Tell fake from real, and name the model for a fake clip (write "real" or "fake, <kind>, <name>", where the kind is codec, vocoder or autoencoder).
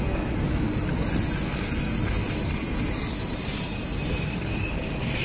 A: real